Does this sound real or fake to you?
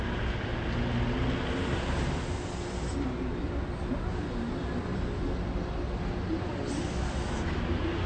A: real